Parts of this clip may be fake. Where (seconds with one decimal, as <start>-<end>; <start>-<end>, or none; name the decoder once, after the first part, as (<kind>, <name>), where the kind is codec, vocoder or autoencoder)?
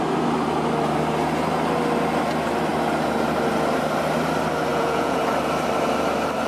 4.7-5.2 (vocoder, Vocos)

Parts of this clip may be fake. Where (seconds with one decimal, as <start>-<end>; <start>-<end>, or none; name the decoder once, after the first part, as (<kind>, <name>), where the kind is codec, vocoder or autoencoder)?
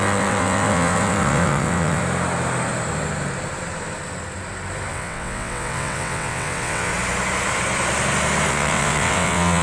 0.0-2.0 (vocoder, WaveNeXt); 4.9-6.9; 8.5-9.6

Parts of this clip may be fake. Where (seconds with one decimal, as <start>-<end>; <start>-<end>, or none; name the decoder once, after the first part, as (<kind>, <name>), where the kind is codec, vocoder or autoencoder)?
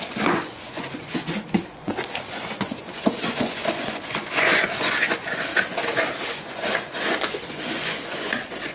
0.0-5.5 (vocoder, Vocos); 6.3-8.7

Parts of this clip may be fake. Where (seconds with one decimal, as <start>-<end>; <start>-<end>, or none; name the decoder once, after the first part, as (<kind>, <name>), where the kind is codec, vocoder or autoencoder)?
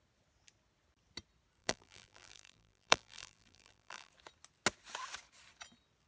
1.6-4.1 (vocoder, BigVGAN v2)